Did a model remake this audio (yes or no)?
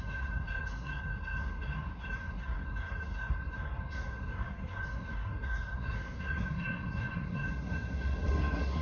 yes